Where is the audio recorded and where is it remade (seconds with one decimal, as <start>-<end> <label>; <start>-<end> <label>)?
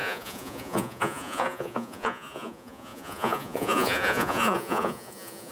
0.0-5.5 remade